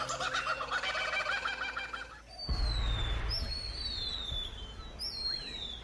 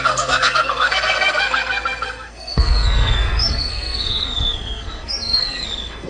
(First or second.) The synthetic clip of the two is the second